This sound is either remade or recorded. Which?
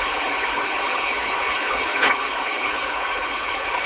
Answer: remade